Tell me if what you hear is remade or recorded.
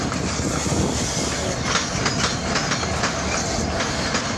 recorded